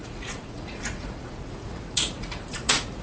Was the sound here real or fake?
fake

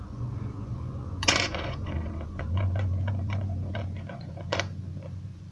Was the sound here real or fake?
fake